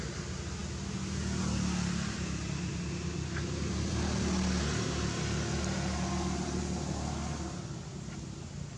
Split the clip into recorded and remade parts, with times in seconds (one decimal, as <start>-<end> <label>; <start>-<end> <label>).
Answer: 0.0-8.8 recorded